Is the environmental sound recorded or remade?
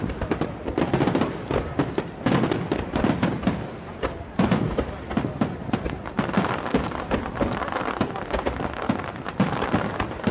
recorded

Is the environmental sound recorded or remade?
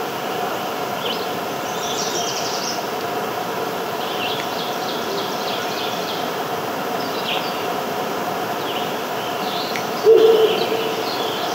remade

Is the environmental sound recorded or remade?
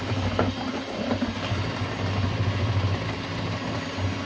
recorded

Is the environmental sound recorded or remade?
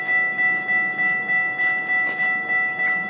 recorded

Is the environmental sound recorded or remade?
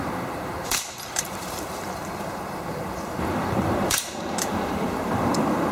remade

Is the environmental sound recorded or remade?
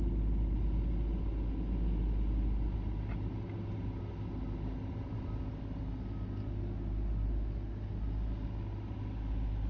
recorded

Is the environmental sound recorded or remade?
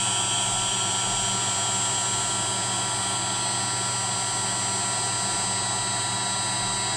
recorded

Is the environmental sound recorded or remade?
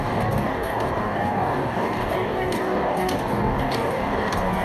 remade